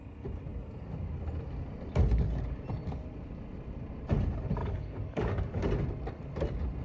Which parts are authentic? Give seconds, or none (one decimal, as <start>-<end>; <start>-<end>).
0.0-4.6; 5.6-6.8